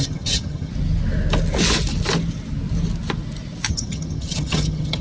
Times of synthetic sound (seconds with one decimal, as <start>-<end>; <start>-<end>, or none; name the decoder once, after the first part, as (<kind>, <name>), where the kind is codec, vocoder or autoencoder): 0.0-0.7 (vocoder, HiFi-GAN); 3.7-5.0